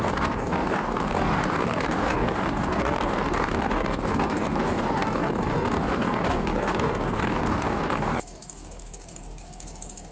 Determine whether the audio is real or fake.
fake